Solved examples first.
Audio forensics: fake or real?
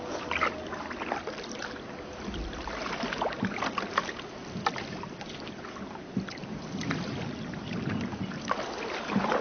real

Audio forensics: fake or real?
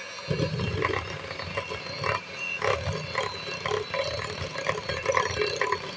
real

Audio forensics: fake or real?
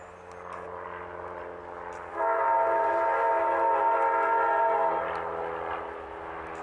real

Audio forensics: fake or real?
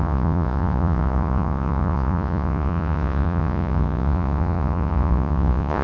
fake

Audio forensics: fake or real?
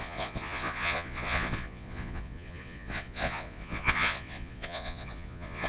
fake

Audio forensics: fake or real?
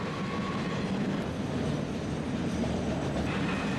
real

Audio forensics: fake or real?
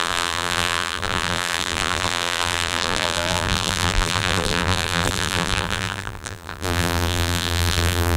fake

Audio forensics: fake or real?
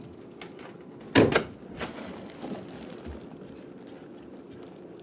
real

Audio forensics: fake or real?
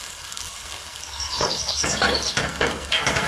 fake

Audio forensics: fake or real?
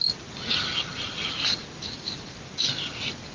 real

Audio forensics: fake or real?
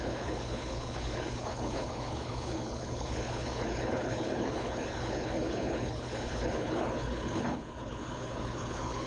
fake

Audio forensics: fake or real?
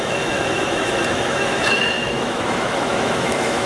fake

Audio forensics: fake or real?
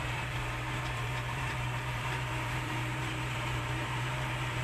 fake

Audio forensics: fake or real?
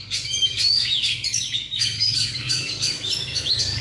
fake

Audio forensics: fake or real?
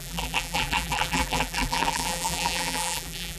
fake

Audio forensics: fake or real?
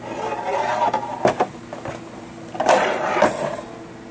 real